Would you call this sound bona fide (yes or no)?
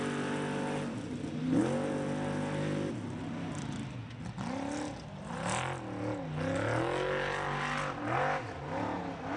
yes